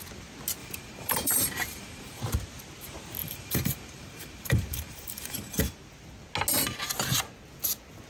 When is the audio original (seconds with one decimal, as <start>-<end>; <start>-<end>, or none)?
0.0-0.6; 2.2-3.2; 5.6-8.1

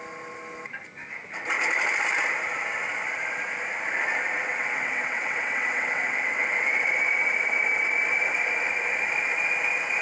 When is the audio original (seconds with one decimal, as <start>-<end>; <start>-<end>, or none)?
0.0-4.5; 6.8-10.0